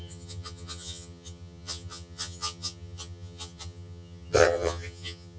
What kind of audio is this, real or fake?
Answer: fake